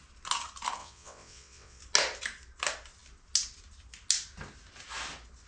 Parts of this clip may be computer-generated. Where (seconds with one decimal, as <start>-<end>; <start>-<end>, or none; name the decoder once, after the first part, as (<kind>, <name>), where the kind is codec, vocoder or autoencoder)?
0.8-1.8 (vocoder, WaveNeXt)